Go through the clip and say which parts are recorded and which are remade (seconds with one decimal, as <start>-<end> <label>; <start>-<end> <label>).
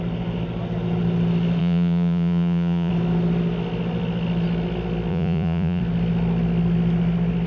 0.0-1.6 recorded; 1.6-2.9 remade; 2.9-5.1 recorded; 5.1-5.8 remade; 5.8-7.5 recorded